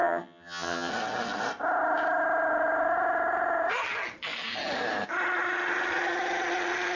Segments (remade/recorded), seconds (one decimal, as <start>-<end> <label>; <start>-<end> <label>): 0.0-0.9 remade; 0.9-7.0 recorded